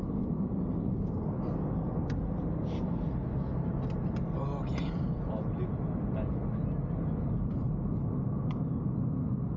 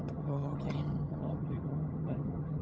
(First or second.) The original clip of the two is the first